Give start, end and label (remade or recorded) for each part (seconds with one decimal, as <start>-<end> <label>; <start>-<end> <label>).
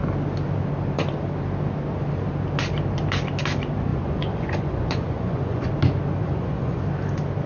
0.0-3.9 recorded; 3.9-5.7 remade; 5.7-6.2 recorded; 6.2-6.8 remade; 6.8-7.5 recorded